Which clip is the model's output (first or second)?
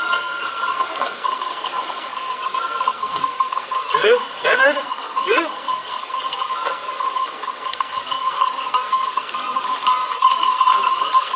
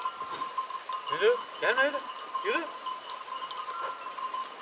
first